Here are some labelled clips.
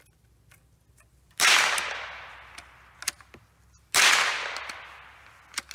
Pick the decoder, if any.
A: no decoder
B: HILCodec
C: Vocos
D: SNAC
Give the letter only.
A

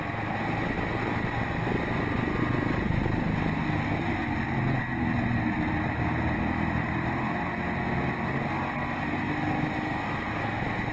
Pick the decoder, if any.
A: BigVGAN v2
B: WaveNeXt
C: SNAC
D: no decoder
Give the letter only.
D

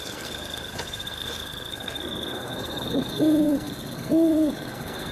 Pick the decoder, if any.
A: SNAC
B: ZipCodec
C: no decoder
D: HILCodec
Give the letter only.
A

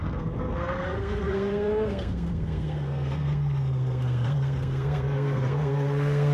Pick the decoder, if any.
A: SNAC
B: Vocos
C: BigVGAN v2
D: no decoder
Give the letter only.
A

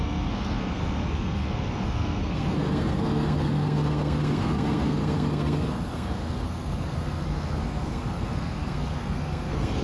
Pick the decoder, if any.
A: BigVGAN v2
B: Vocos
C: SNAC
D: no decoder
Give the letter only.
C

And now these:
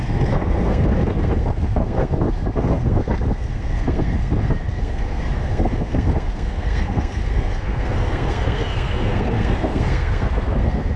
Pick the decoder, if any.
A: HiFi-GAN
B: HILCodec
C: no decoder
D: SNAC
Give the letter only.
D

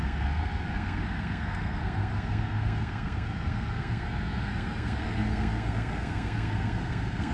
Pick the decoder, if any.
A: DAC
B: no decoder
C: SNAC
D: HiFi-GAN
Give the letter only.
C